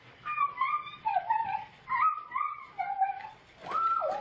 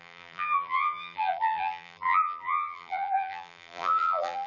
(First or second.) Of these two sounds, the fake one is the second